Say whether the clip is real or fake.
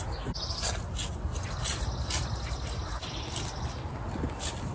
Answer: real